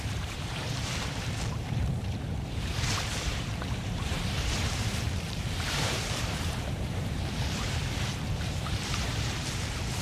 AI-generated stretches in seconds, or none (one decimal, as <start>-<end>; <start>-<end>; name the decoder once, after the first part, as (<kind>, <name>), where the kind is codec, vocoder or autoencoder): 0.0-2.7 (vocoder, BigVGAN v2); 3.2-10.0